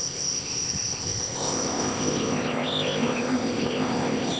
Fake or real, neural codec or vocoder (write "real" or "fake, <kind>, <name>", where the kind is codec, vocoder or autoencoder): fake, codec, ZipCodec